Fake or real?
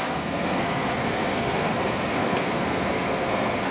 fake